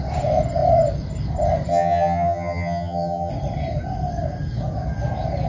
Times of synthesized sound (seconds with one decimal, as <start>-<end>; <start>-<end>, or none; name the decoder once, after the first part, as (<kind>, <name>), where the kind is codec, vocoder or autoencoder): 1.7-3.3 (vocoder, HiFi-GAN)